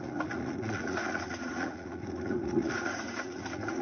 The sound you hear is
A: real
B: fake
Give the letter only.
B